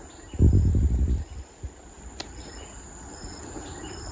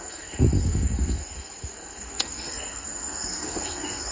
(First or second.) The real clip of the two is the first